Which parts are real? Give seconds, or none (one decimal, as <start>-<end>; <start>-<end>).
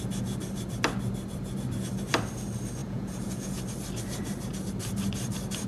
0.0-2.8; 3.6-5.7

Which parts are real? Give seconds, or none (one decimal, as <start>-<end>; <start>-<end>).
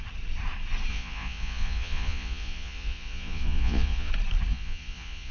0.0-0.9; 4.1-4.5